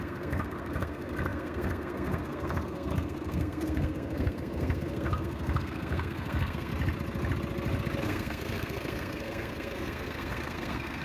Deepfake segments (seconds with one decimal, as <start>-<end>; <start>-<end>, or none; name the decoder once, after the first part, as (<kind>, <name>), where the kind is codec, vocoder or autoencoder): 0.0-6.7 (codec, SNAC); 8.0-11.0